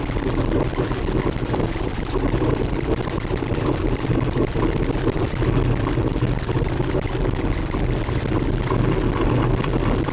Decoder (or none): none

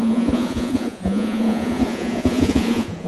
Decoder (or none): vocoder, Vocos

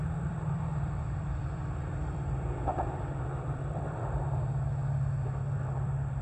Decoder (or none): vocoder, BigVGAN v2